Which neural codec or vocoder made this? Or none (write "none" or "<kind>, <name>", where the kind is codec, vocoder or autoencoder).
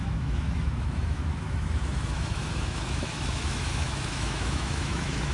autoencoder, DAC-VAE